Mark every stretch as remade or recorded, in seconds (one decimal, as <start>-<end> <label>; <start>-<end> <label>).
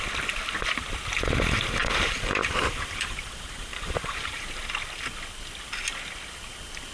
0.0-1.8 recorded; 1.8-4.6 remade; 4.6-6.9 recorded